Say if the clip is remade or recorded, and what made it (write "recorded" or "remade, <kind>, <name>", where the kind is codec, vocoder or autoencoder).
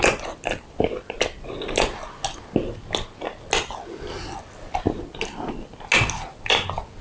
recorded